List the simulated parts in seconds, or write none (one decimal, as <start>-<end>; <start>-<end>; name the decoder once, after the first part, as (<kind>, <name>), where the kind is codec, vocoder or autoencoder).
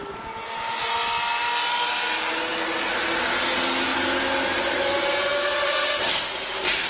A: none